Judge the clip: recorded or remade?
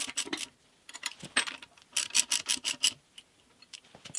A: recorded